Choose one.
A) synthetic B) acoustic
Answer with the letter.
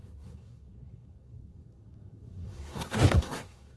A